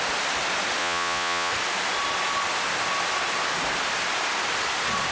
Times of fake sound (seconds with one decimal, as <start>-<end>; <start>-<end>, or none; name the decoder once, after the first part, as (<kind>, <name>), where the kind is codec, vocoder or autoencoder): 0.8-1.5 (vocoder, Vocos)